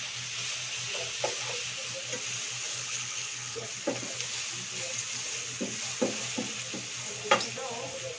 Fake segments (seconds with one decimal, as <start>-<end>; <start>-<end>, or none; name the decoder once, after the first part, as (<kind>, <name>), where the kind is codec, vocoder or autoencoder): 2.7-3.7 (codec, HILCodec)